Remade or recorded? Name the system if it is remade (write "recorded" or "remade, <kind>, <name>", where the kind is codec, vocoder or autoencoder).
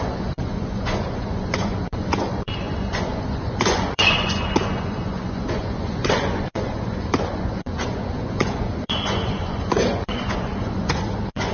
remade, vocoder, Vocos